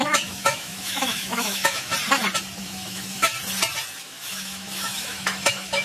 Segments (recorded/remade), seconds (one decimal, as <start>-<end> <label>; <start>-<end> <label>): 0.0-1.9 remade; 1.9-2.6 recorded; 2.6-3.3 remade; 3.3-4.0 recorded; 4.0-5.8 remade